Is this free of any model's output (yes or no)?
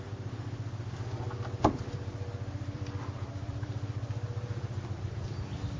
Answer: no